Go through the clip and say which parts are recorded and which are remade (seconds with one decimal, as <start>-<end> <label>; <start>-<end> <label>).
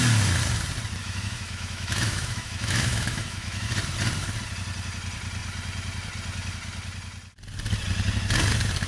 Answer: 0.0-1.0 recorded; 1.0-3.7 remade; 3.7-8.9 recorded